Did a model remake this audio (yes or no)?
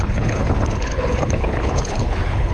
yes